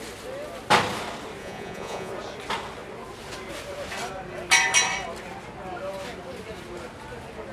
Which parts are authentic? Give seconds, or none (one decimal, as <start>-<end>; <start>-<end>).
0.0-1.4; 2.1-7.5